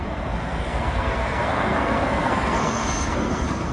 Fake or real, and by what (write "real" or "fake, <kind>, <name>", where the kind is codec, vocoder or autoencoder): fake, codec, SNAC